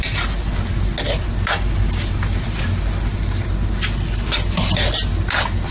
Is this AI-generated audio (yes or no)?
no